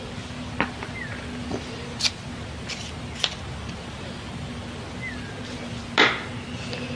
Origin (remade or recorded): recorded